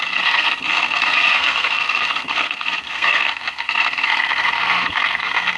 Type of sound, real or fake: fake